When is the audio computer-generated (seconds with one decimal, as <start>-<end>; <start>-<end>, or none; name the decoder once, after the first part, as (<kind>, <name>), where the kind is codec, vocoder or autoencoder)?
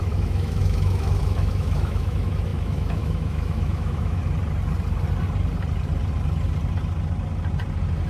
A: 0.0-4.2 (autoencoder, DAC-VAE)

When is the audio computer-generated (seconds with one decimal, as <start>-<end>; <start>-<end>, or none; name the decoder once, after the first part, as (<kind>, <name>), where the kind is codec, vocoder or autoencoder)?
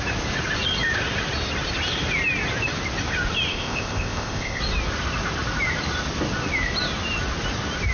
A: 3.5-4.6 (codec, ZipCodec)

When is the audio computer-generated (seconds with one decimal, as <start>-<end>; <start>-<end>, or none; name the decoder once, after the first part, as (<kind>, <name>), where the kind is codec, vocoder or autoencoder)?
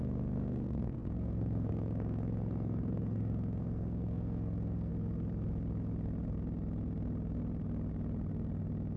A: 0.0-4.9 (codec, SNAC)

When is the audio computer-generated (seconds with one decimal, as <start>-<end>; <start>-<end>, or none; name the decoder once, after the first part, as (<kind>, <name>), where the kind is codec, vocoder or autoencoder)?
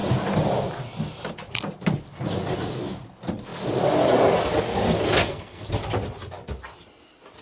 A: 5.2-5.7 (codec, SNAC)